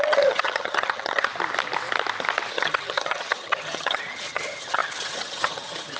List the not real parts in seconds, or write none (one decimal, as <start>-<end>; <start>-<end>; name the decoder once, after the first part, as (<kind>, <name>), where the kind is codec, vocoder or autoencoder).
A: 0.0-1.3 (vocoder, HiFi-GAN); 2.5-6.0

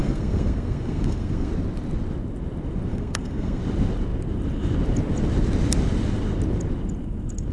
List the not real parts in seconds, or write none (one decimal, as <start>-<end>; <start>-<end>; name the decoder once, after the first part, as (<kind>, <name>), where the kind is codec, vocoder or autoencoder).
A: 0.0-1.5 (codec, SNAC); 2.9-3.6

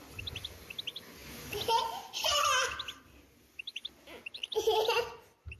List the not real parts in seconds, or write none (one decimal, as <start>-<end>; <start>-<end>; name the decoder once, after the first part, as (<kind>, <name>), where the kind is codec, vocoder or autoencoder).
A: none

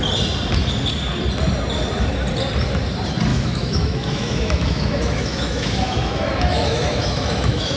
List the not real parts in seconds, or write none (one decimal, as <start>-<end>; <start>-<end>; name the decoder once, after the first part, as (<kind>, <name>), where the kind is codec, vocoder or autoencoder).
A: 3.3-7.8 (autoencoder, DAC-VAE)

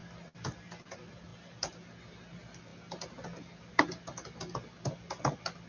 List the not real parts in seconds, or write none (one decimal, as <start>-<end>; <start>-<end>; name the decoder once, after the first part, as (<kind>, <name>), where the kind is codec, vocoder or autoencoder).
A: none